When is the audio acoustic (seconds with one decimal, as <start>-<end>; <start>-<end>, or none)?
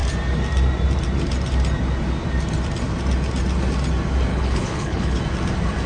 0.0-4.3; 5.2-5.9